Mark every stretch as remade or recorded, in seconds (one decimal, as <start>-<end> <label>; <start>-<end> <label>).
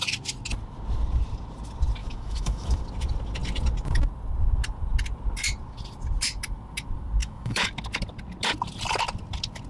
0.0-2.0 recorded; 2.0-2.8 remade; 2.8-7.2 recorded; 7.2-7.7 remade; 7.7-9.7 recorded